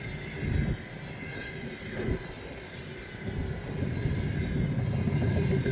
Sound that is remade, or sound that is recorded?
recorded